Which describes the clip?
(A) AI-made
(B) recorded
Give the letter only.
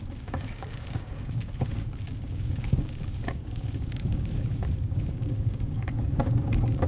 A